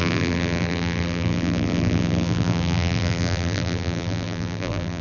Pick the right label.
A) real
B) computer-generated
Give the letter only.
B